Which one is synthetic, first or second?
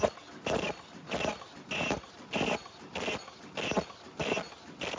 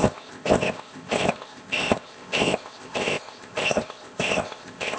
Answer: second